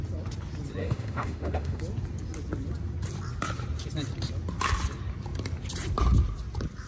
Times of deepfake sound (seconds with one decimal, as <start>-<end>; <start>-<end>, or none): 0.8-1.8